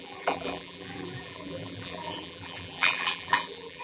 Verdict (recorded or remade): remade